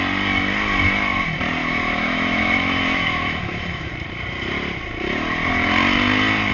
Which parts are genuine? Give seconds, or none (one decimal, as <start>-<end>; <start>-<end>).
0.0-1.6; 3.9-6.5